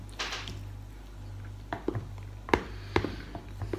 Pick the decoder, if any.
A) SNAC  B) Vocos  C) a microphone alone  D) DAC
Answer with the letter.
C